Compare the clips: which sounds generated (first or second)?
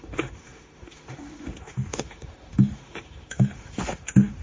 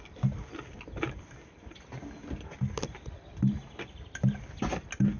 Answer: first